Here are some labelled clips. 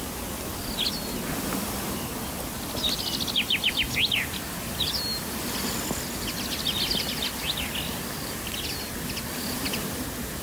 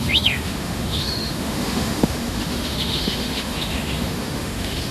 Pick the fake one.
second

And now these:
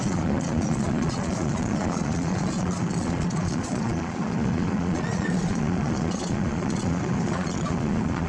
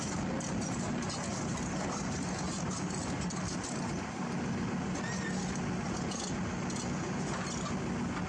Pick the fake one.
first